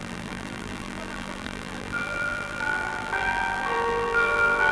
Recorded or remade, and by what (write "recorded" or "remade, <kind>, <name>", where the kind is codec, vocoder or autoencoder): remade, vocoder, BigVGAN v2